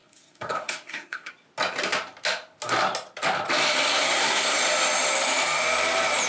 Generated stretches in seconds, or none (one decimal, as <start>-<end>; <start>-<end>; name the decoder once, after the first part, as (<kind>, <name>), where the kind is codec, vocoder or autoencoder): 0.0-1.3 (codec, SNAC); 3.9-4.6